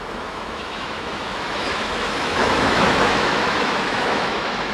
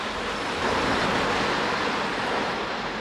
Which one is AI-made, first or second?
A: first